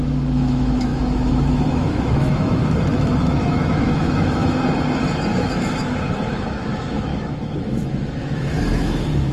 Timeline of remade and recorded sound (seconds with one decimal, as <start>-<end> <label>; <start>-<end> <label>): 0.0-4.4 remade; 4.4-5.2 recorded; 5.2-9.3 remade